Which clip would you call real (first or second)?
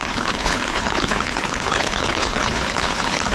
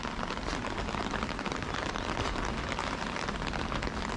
second